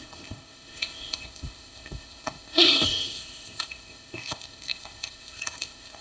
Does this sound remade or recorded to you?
remade